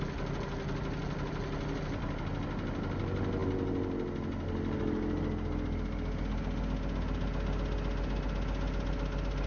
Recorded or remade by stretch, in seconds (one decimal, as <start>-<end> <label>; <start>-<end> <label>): 0.0-9.5 recorded